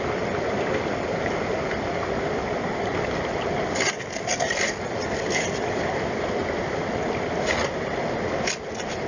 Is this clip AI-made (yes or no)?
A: no